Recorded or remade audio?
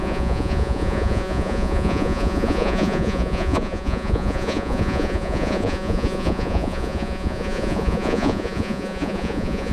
remade